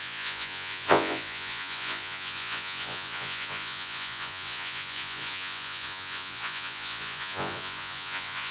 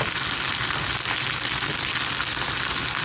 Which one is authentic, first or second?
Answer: second